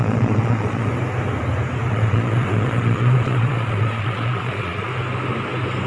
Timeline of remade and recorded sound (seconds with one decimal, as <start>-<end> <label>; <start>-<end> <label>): 0.0-0.9 remade; 0.9-1.9 recorded; 1.9-4.9 remade; 4.9-5.9 recorded